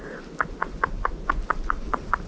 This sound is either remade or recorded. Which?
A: recorded